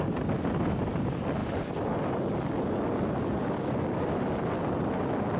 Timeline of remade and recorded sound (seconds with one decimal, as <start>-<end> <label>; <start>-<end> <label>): 0.0-5.4 recorded